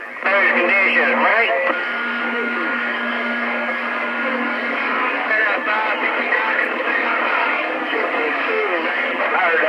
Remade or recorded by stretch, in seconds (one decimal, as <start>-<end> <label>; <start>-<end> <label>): 0.0-1.3 recorded; 1.3-5.4 remade; 5.4-7.4 recorded; 7.4-9.2 remade; 9.2-9.7 recorded

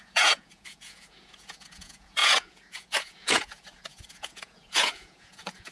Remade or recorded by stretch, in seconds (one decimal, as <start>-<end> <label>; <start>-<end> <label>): 0.0-5.7 remade

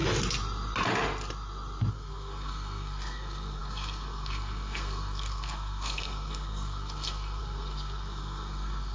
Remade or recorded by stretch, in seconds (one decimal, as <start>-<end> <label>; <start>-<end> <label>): 0.0-1.9 recorded; 1.9-8.9 remade

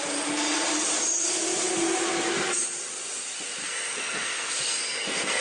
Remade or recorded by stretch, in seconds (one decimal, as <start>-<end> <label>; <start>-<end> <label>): 0.0-3.6 recorded; 3.6-5.4 remade

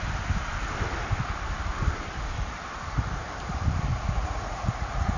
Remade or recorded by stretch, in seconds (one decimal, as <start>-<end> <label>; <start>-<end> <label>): 0.0-3.9 recorded; 3.9-5.2 remade

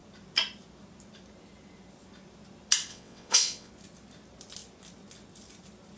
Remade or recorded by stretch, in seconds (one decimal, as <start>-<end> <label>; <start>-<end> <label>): 0.0-2.9 recorded; 2.9-3.7 remade; 3.7-6.0 recorded